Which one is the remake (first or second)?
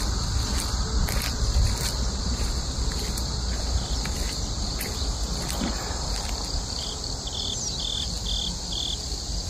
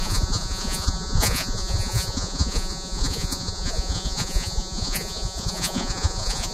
second